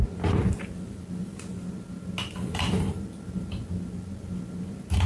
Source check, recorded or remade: recorded